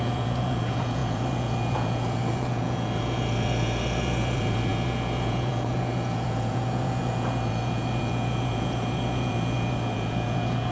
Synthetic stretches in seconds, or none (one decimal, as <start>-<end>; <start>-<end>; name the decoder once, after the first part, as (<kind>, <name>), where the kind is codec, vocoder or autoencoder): 0.0-10.7 (vocoder, Vocos)